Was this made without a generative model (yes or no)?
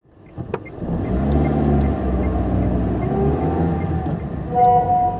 yes